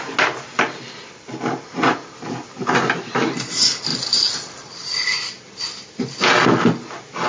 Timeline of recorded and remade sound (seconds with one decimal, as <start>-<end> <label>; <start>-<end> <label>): 0.0-7.3 recorded